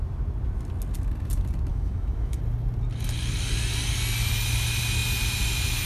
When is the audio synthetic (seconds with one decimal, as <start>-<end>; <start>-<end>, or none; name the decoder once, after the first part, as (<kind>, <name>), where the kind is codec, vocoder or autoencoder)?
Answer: 1.7-2.4 (autoencoder, DAC-VAE)